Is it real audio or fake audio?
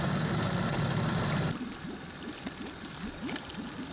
real